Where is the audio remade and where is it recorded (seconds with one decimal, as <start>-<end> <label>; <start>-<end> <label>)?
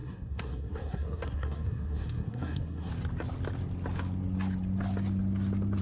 0.0-2.9 remade; 2.9-5.8 recorded